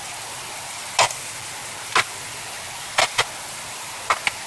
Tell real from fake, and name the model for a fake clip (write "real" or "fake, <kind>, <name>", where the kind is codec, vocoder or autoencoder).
real